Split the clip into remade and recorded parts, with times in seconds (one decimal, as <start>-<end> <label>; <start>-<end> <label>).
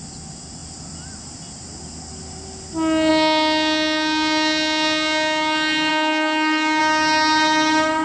0.0-5.9 recorded; 5.9-6.8 remade; 6.8-8.0 recorded